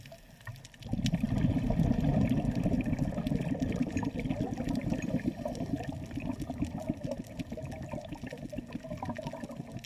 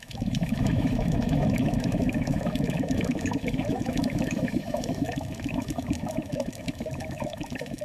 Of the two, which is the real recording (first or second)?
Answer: first